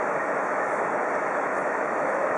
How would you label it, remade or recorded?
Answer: remade